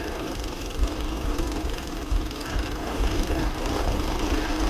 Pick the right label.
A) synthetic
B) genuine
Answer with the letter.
A